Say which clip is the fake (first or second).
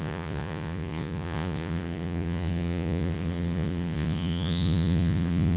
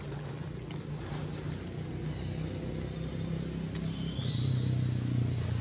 first